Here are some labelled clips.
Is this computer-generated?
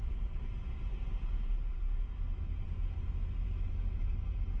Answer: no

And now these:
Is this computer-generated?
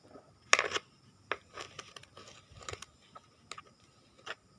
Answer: no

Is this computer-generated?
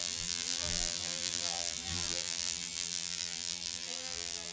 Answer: yes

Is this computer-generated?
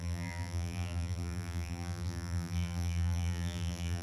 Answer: yes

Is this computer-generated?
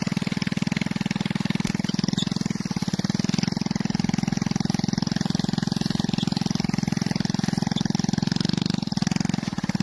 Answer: no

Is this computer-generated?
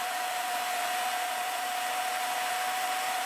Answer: yes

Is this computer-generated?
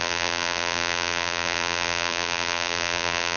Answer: yes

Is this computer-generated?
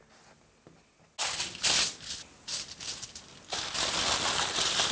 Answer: no